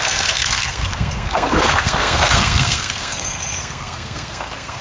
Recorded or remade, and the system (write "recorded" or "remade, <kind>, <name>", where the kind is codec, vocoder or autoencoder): remade, codec, SNAC